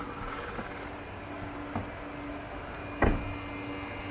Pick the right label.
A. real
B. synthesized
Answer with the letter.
A